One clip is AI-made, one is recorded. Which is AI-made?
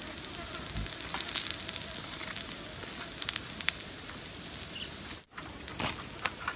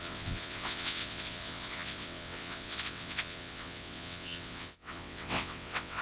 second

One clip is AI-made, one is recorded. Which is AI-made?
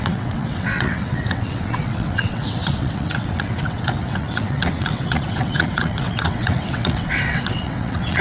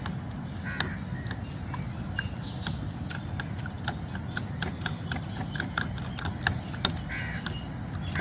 first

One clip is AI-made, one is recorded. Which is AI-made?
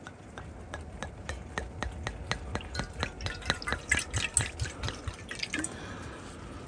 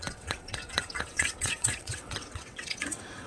second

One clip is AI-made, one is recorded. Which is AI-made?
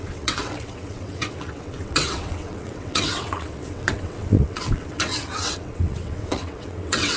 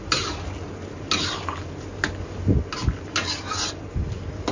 first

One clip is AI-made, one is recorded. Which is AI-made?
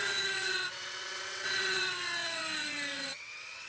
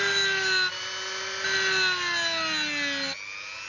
first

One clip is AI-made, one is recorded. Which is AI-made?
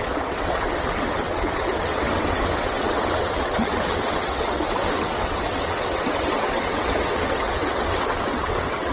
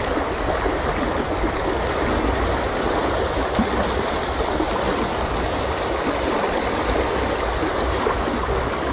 first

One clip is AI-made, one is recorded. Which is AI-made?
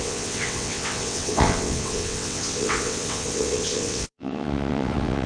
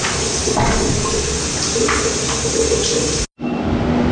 first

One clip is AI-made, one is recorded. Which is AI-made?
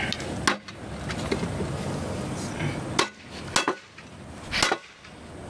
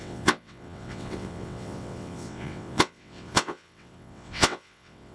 second